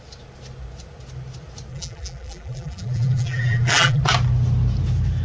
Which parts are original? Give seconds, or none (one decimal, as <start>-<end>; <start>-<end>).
0.0-1.7; 4.0-5.2